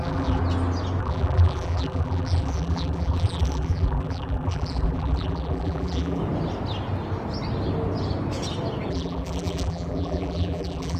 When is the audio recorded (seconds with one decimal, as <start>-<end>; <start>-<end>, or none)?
0.4-1.0; 6.2-8.9